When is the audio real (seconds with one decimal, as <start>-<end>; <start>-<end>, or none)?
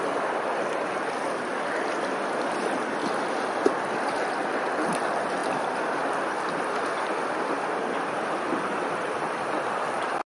0.0-10.3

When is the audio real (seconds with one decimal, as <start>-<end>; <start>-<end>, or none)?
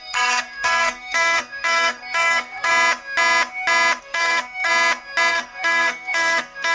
2.7-4.0; 4.7-5.3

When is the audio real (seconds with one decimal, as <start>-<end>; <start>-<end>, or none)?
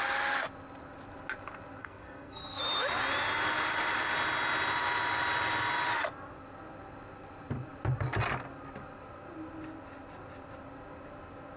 0.0-1.8; 2.6-11.6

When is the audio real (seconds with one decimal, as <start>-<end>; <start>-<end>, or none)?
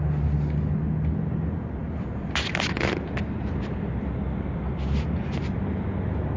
0.0-6.4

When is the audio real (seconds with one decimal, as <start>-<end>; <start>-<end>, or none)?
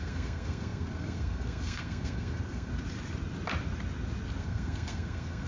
2.7-4.4